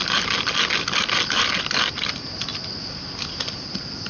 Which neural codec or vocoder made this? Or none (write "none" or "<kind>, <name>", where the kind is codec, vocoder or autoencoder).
none